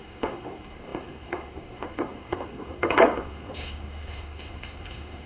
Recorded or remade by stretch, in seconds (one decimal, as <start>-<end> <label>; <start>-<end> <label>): 0.0-5.3 remade